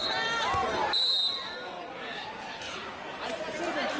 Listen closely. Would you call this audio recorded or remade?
recorded